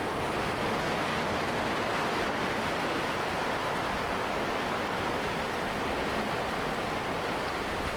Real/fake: real